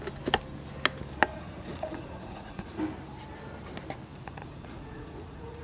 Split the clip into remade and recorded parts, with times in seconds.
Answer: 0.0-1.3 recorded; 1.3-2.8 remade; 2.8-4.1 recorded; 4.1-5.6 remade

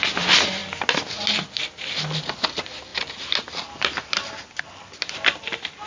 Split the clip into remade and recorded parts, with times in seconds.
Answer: 0.0-5.9 recorded